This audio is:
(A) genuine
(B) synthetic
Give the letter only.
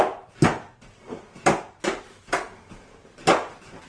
A